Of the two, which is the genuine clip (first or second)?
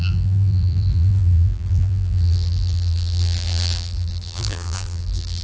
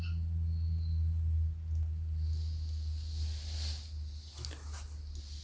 second